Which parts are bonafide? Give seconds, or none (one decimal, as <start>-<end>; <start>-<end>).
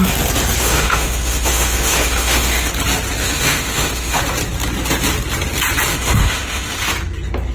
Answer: 0.0-0.6; 2.7-3.2; 4.2-5.9; 6.9-7.5